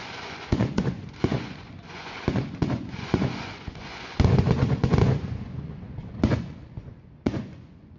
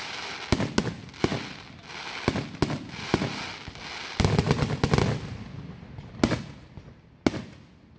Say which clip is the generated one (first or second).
first